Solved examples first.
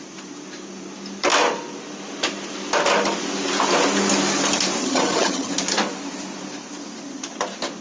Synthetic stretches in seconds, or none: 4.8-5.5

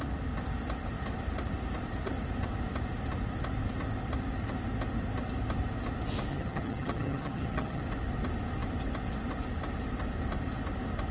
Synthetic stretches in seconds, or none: 6.3-7.8

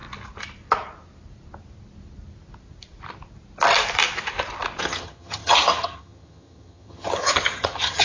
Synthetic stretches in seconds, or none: 4.8-8.0